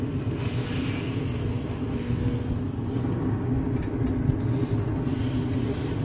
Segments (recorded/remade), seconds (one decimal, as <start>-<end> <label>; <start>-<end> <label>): 0.0-0.8 recorded; 0.8-2.4 remade; 2.4-6.0 recorded